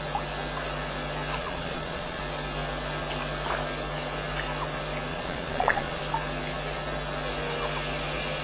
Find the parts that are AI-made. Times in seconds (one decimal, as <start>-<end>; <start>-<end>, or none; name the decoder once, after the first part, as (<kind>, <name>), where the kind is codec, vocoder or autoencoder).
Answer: 1.4-2.2 (vocoder, Vocos); 5.1-6.0